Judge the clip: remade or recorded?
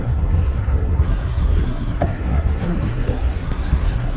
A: remade